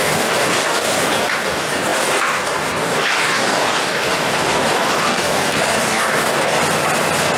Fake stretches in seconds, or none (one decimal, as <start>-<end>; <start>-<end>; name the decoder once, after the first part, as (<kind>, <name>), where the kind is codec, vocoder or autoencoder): 0.0-6.6 (codec, DAC)